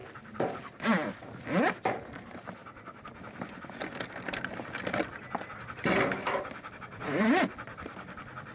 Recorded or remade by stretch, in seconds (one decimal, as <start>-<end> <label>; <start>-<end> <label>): 0.0-8.5 recorded